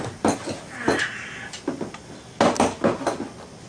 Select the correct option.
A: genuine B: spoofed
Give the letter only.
A